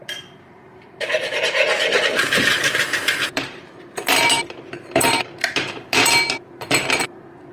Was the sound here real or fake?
fake